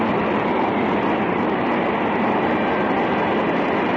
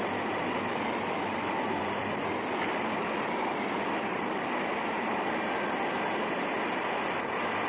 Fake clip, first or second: second